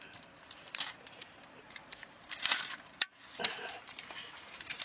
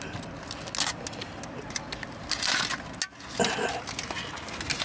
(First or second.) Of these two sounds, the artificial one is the first